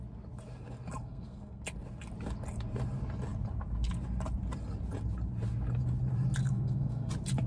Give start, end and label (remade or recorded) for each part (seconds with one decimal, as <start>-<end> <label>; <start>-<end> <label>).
0.0-1.0 recorded; 1.0-1.6 remade; 1.6-6.4 recorded; 6.4-7.1 remade; 7.1-7.5 recorded